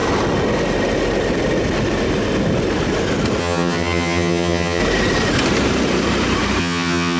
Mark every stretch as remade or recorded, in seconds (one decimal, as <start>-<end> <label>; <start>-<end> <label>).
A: 0.0-3.4 recorded; 3.4-4.8 remade; 4.8-6.6 recorded; 6.6-7.2 remade